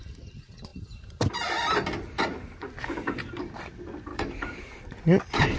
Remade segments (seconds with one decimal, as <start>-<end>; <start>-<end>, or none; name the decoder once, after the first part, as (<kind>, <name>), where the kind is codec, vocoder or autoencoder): 4.1-4.6 (codec, DAC)